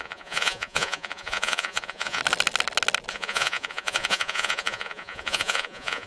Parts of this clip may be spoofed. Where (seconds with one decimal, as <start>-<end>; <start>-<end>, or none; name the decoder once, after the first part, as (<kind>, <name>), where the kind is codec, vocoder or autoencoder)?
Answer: 0.0-2.2 (vocoder, Vocos); 3.1-6.1

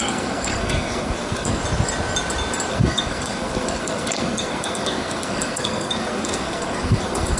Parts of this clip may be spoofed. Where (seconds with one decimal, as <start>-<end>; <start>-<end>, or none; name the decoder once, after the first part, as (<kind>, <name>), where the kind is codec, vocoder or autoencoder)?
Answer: 0.0-1.6 (codec, SNAC); 2.7-7.4

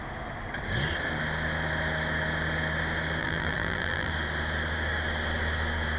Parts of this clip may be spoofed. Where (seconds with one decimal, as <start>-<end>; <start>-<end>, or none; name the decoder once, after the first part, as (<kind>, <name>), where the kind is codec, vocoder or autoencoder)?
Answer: 3.2-4.1 (vocoder, BigVGAN v2)